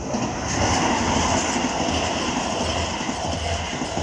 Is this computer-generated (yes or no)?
no